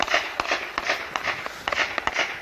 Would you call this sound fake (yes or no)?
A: no